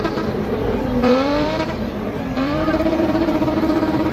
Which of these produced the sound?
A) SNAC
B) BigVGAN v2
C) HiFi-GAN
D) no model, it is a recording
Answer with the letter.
B